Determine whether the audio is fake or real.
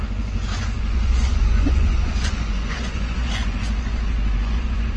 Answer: fake